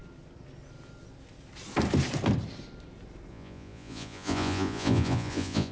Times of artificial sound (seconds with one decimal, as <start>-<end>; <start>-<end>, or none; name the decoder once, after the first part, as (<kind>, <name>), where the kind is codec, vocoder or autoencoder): 3.3-5.7 (vocoder, Vocos)